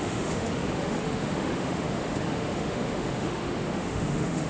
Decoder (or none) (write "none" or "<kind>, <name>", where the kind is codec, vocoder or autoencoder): autoencoder, DAC-VAE